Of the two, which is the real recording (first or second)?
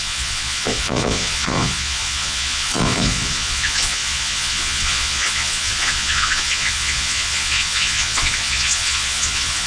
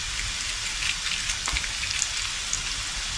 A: second